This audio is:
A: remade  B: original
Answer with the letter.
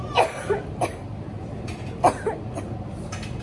B